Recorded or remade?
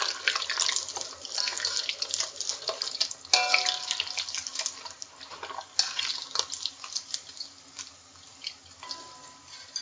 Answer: recorded